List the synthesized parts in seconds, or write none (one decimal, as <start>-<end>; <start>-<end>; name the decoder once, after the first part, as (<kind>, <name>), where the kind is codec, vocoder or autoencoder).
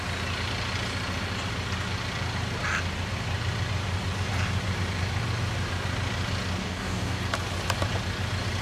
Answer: 6.6-7.2 (codec, DAC)